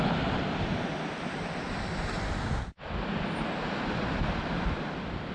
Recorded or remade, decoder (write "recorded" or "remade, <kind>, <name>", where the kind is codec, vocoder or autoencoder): recorded